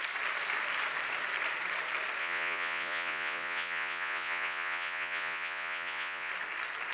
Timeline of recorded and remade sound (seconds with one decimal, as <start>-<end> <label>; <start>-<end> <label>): 0.0-2.2 recorded; 2.2-6.3 remade; 6.3-6.9 recorded